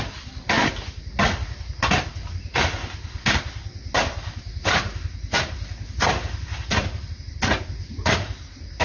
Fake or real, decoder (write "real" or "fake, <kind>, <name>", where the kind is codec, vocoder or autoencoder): real